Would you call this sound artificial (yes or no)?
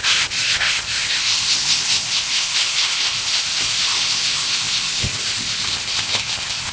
yes